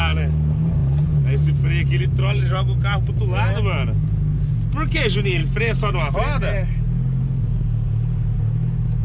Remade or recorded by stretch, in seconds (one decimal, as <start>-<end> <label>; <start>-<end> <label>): 0.0-9.0 recorded